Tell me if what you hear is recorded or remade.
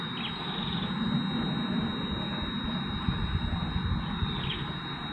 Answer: recorded